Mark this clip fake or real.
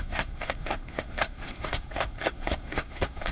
fake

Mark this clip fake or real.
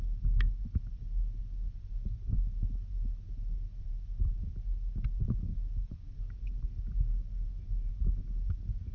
real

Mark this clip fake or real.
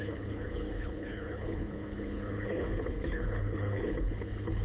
fake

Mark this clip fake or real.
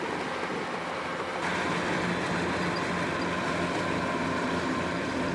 real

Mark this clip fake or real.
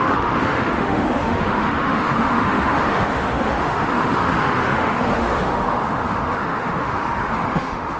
fake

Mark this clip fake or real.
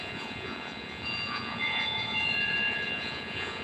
fake